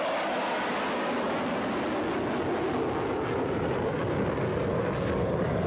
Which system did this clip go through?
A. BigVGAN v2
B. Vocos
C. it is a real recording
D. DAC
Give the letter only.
C